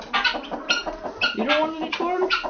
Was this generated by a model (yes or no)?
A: no